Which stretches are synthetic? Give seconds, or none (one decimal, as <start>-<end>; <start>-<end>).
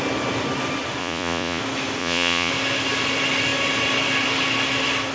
1.0-1.6; 2.0-2.5